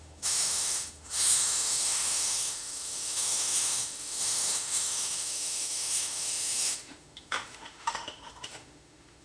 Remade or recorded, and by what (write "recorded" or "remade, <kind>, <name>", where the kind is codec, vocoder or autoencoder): remade, autoencoder, DAC-VAE